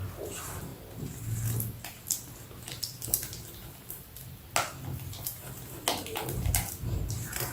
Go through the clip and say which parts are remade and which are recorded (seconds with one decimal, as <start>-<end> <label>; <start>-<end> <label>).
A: 0.0-7.5 recorded